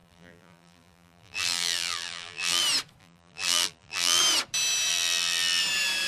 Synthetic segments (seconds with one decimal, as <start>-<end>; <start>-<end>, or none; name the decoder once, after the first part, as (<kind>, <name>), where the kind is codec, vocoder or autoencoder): 0.0-2.6 (vocoder, BigVGAN v2); 3.0-4.2; 4.9-5.6